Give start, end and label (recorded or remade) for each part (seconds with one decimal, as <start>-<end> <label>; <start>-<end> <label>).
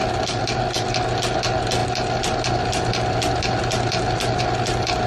0.0-5.1 recorded